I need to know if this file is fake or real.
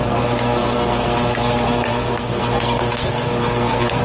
fake